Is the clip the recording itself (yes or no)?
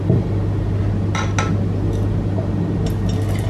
yes